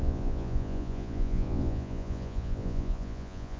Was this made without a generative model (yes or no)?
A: no